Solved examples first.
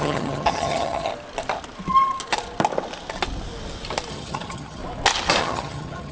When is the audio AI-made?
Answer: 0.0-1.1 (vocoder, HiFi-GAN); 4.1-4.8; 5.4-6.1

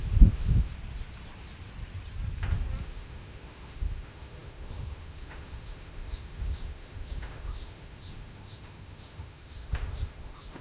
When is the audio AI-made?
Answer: 0.0-0.7 (autoencoder, DAC-VAE); 2.8-10.6

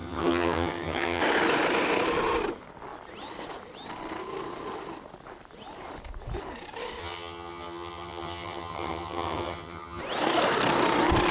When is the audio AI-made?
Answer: 0.0-1.2 (vocoder, HiFi-GAN); 7.0-10.0

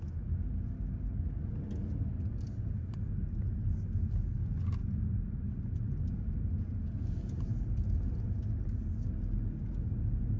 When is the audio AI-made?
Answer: none